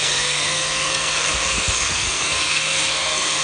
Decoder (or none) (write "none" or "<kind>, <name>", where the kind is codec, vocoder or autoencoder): codec, SNAC